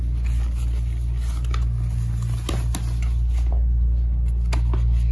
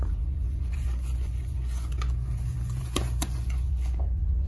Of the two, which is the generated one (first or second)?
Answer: second